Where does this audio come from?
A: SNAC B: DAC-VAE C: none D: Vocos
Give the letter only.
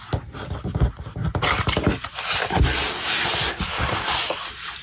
C